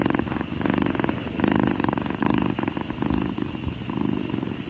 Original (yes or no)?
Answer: yes